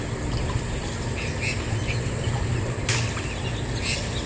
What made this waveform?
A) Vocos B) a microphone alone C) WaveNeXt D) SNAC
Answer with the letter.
B